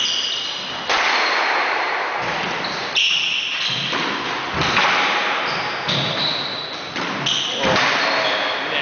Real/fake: real